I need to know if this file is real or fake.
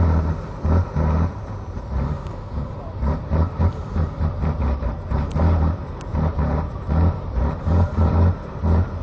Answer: fake